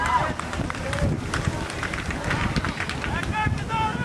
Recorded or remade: remade